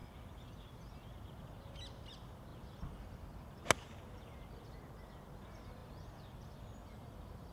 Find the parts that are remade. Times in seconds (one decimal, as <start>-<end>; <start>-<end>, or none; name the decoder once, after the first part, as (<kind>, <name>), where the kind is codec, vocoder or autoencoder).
none

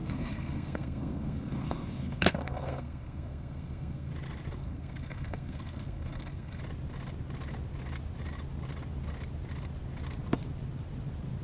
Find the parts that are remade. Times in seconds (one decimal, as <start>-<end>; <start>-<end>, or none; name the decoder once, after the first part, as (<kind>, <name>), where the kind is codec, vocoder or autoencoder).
0.0-4.1 (codec, SNAC); 4.6-6.6

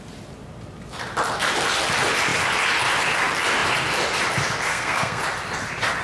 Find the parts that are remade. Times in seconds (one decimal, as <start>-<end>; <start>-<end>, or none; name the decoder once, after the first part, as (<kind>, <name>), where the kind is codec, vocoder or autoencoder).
4.7-5.2 (codec, SNAC)

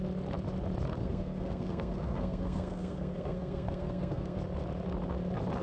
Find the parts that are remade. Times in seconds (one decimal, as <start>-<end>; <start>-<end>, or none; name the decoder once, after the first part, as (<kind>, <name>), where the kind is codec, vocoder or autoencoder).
1.0-4.4 (codec, SNAC)

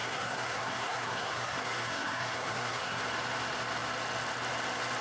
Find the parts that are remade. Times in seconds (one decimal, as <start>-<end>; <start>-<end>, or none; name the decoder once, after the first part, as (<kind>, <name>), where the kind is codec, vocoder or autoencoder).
0.0-3.0 (codec, SNAC)

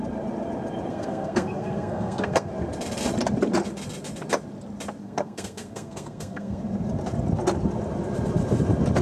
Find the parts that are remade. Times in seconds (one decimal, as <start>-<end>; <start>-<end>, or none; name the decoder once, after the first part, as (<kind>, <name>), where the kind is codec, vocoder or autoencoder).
0.9-2.5 (codec, SNAC); 5.0-6.6